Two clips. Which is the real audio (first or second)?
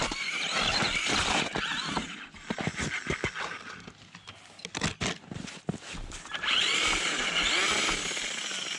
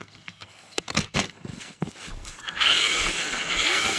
first